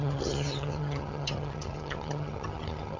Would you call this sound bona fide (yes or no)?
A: no